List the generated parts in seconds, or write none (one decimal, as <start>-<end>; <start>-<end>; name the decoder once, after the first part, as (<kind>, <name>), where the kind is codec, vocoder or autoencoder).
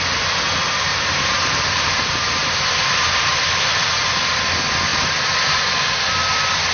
0.9-3.5 (vocoder, BigVGAN v2); 4.9-5.6